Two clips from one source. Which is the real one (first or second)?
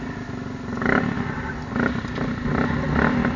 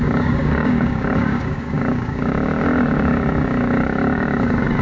first